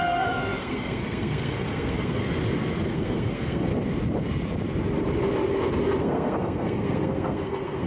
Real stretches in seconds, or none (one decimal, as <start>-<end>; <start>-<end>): 2.2-2.9; 3.7-6.0